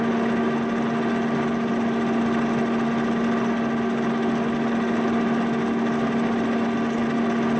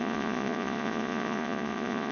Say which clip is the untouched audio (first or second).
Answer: first